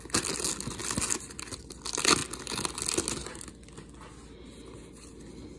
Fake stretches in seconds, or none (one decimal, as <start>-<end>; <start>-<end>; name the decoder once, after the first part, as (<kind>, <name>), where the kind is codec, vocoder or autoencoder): none